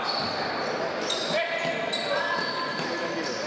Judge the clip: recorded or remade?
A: recorded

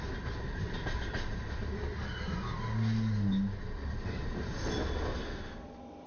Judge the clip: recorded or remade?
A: recorded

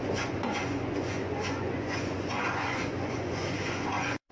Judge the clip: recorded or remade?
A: remade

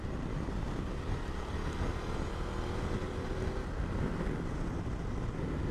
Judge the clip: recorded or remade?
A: recorded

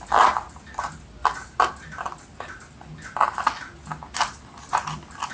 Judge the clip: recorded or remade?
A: recorded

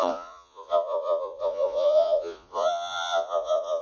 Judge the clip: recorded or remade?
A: remade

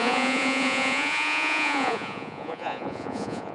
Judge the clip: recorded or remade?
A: remade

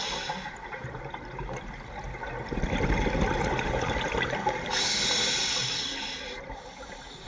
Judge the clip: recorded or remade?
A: recorded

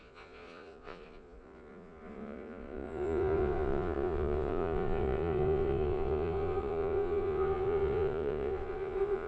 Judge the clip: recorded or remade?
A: remade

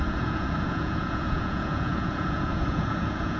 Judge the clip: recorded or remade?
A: remade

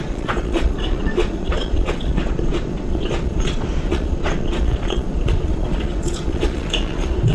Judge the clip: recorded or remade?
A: remade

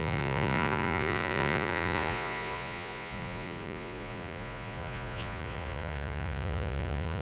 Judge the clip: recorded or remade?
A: remade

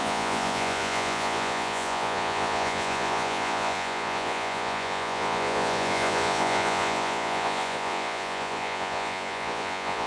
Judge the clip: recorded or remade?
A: remade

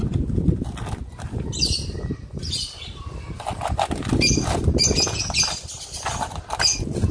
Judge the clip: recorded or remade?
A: recorded